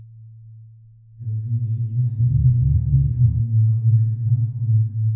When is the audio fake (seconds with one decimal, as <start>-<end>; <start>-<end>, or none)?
2.2-3.4

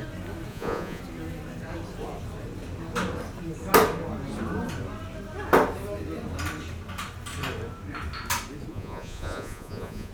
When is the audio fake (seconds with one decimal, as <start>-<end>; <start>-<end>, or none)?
0.5-1.0; 8.7-10.1

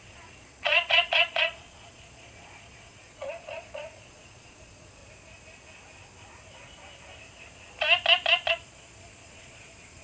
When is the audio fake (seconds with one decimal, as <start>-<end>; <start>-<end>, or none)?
0.0-5.0; 8.5-10.0

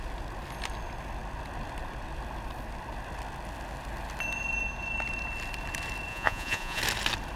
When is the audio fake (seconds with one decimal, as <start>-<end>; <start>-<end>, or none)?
6.1-6.8